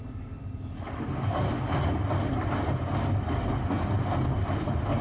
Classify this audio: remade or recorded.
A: recorded